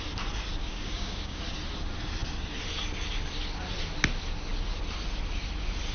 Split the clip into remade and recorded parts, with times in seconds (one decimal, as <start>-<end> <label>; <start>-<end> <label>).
0.0-0.6 recorded; 0.6-1.4 remade; 1.4-5.9 recorded